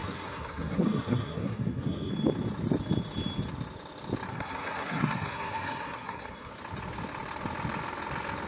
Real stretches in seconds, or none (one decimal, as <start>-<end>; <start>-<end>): 2.1-4.3; 6.5-8.5